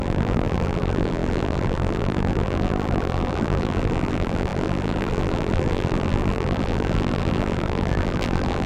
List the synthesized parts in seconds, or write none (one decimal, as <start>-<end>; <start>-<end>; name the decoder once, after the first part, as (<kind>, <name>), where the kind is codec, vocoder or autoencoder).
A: 0.0-8.7 (vocoder, BigVGAN v2)

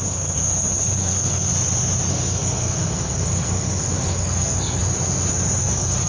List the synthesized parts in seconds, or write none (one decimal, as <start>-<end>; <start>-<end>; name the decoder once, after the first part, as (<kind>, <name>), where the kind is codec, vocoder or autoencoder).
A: 0.0-1.5 (codec, SNAC); 2.1-4.8; 5.6-6.1